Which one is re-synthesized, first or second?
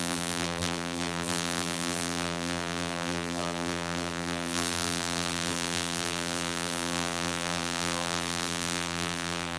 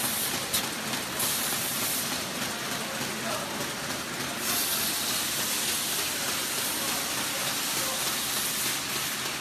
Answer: first